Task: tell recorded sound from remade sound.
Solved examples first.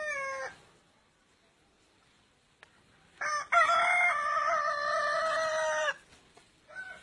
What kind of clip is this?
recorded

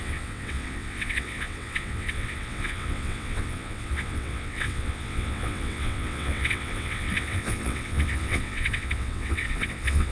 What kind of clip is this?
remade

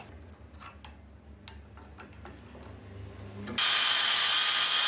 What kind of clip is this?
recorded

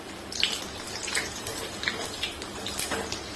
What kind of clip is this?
recorded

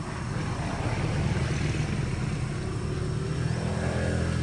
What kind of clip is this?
recorded